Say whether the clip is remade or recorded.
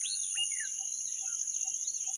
recorded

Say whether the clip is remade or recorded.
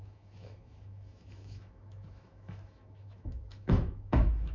remade